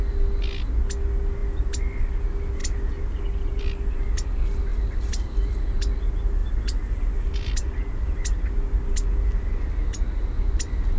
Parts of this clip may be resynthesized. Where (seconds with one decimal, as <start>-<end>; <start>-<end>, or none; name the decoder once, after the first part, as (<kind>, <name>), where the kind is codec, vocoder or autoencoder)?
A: 4.7-5.6 (vocoder, BigVGAN v2); 6.4-7.5